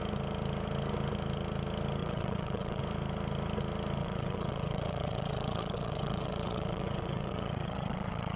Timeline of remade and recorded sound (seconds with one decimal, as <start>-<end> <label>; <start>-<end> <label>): 0.0-2.0 recorded; 2.0-2.8 remade; 2.8-4.0 recorded; 4.0-8.4 remade